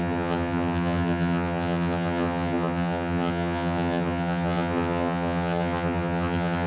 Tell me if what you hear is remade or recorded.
remade